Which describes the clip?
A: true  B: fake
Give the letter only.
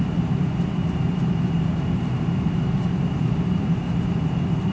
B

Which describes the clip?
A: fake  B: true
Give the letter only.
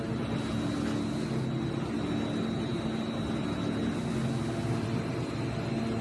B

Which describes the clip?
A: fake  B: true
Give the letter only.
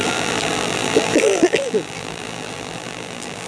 A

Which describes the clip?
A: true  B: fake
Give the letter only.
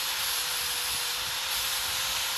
B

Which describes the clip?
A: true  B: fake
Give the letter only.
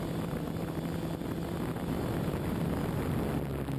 A